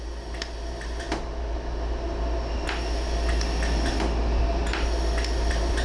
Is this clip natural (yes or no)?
yes